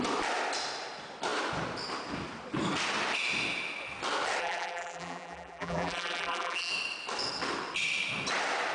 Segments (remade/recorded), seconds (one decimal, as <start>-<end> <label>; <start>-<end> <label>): 0.0-4.4 recorded; 4.4-6.7 remade; 6.7-8.7 recorded

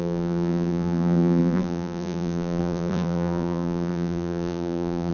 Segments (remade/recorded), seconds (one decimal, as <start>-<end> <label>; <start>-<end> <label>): 0.0-5.1 remade

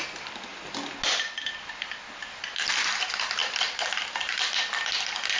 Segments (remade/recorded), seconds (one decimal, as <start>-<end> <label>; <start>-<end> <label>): 0.0-5.4 recorded

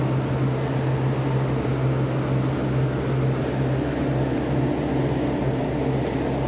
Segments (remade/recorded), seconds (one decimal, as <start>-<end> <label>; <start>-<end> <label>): 0.0-6.5 recorded

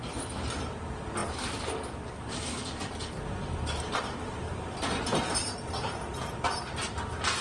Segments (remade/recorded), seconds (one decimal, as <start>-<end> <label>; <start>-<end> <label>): 0.0-7.4 recorded